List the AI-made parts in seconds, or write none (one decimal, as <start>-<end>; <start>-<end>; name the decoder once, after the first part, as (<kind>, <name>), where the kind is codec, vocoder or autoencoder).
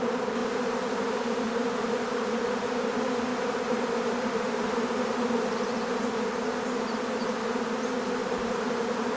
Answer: 3.3-5.0 (vocoder, BigVGAN v2); 8.2-9.2